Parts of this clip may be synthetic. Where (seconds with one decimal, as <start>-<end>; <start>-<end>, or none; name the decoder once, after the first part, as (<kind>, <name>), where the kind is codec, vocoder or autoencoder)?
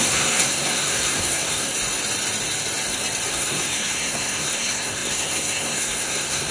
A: 0.0-1.7 (codec, SNAC); 3.3-6.5